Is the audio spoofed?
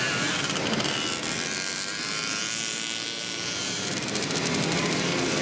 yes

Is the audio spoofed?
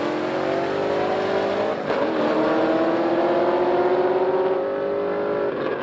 no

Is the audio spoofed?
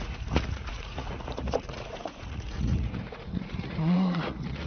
yes